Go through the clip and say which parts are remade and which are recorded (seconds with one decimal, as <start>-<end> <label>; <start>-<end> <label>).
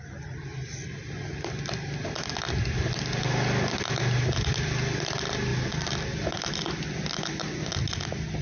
0.0-8.4 recorded